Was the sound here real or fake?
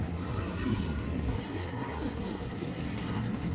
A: fake